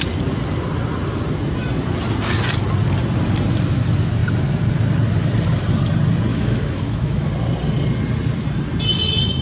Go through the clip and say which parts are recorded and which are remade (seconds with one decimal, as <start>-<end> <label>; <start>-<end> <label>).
0.0-6.3 recorded; 6.3-7.3 remade; 7.3-9.4 recorded